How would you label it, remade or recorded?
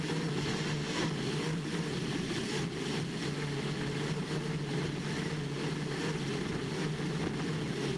recorded